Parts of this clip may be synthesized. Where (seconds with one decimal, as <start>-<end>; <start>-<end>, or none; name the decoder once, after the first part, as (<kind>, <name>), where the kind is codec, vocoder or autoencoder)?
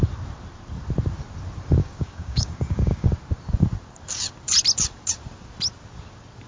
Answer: 1.8-3.1 (codec, DAC)